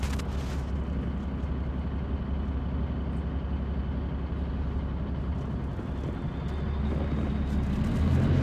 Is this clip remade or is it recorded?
recorded